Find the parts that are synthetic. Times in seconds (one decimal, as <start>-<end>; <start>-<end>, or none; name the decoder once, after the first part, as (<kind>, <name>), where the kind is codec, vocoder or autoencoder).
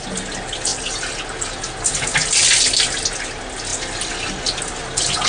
none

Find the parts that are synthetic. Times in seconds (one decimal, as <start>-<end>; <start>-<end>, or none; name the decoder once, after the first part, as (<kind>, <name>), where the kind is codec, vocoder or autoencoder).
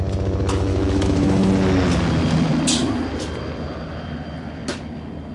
0.7-1.5 (autoencoder, DAC-VAE)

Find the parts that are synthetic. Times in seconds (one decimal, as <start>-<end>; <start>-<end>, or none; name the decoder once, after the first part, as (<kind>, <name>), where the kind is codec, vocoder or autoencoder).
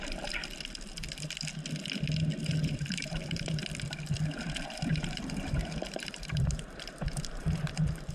0.0-0.4 (vocoder, BigVGAN v2); 2.4-3.6; 4.8-8.1